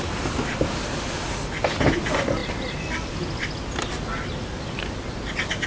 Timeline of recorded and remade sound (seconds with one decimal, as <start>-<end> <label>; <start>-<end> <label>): 0.0-5.7 recorded